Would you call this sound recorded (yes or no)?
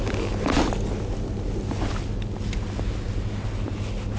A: yes